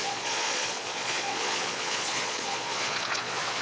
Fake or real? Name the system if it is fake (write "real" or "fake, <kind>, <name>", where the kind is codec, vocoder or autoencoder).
fake, vocoder, Vocos